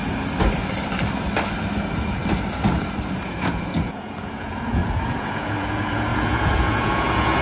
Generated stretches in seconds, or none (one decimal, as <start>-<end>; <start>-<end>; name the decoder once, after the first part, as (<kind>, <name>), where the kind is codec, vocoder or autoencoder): 3.2-7.4 (vocoder, Vocos)